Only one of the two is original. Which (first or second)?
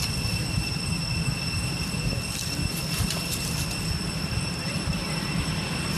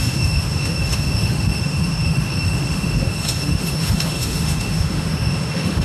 first